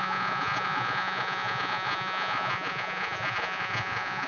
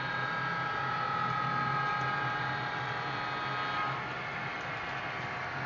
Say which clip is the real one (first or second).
second